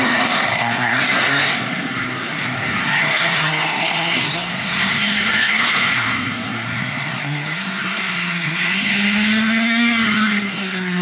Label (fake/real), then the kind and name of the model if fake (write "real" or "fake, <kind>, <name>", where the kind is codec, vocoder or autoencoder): fake, codec, SNAC